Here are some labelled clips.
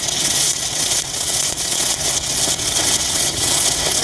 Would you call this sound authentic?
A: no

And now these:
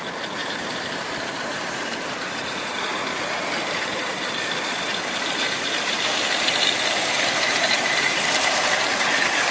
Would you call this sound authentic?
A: no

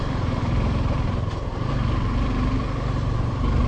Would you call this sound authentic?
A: no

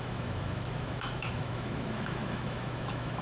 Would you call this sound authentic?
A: no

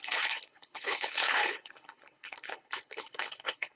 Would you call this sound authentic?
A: no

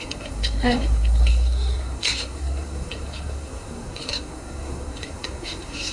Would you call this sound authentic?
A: no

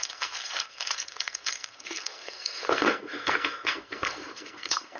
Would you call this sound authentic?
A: no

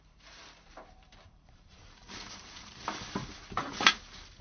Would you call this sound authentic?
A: no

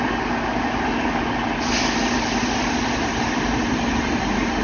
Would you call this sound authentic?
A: yes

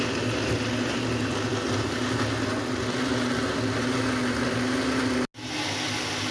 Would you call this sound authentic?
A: yes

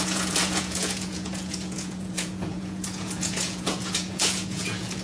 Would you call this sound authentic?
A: no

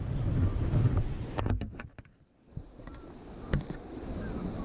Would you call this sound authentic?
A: yes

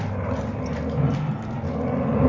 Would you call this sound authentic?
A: yes